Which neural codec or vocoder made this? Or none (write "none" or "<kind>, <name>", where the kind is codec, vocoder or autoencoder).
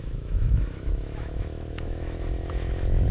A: autoencoder, DAC-VAE